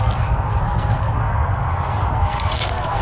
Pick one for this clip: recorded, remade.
remade